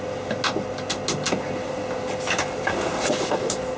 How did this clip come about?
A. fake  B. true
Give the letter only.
B